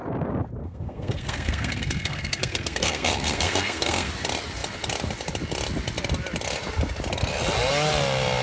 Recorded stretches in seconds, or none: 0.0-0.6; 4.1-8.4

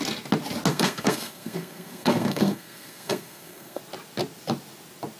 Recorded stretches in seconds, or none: 0.0-0.7; 3.8-5.2

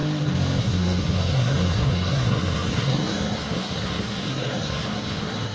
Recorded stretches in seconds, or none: 0.0-0.6

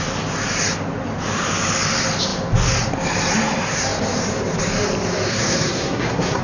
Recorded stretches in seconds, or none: 0.0-5.3

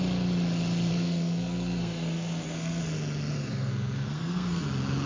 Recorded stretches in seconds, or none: 0.0-0.9; 2.8-3.3; 4.6-5.1

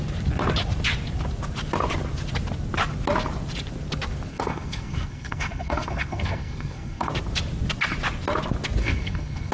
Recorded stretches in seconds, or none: 0.0-4.3; 7.1-8.8

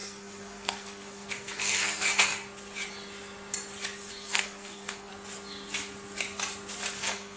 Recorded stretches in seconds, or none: 2.3-4.1; 5.1-7.0

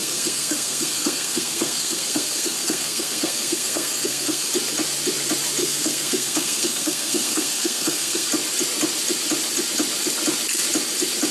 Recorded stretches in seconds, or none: 4.5-5.6; 8.3-11.3